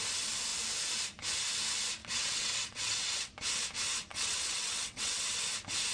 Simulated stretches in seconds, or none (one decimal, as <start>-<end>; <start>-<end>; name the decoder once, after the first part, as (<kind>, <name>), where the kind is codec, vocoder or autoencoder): 2.0-3.3 (vocoder, WaveNeXt); 4.1-5.2